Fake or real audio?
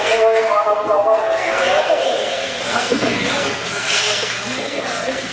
fake